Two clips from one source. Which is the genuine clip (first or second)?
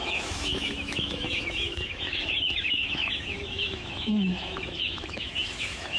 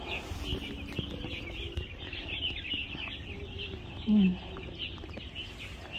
second